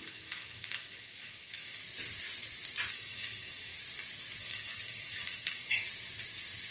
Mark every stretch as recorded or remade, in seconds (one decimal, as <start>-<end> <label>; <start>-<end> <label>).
0.0-1.8 remade; 1.8-2.9 recorded; 2.9-3.7 remade; 3.7-4.4 recorded; 4.4-5.8 remade; 5.8-6.7 recorded